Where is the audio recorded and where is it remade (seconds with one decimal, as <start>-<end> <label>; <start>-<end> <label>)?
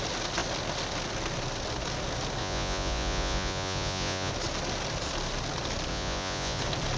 0.0-2.4 recorded; 2.4-4.3 remade; 4.3-5.9 recorded; 5.9-6.6 remade; 6.6-7.0 recorded